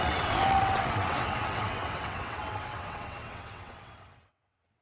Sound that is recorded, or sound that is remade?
remade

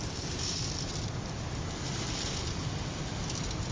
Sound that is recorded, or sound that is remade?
recorded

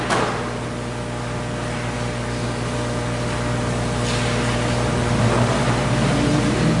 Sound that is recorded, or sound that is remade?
recorded